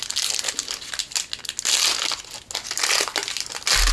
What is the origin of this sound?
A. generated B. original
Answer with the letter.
B